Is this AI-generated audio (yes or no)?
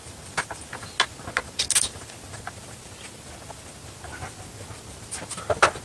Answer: no